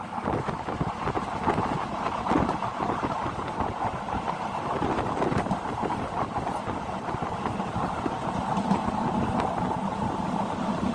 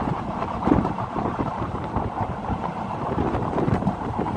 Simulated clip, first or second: second